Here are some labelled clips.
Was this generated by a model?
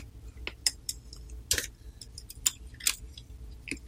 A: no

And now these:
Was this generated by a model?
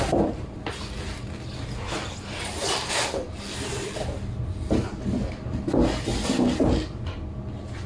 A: no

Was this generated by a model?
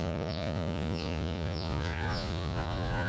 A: yes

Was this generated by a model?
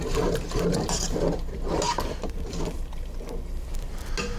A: no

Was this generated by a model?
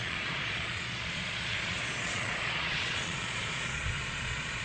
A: yes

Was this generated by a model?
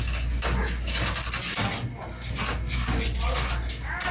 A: no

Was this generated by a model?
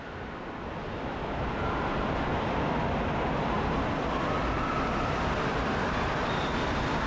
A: no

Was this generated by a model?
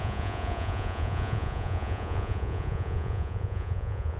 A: yes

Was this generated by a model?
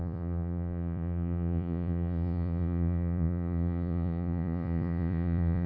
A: yes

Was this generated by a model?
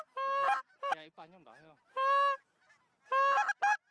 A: no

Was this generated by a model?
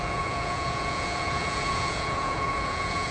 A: yes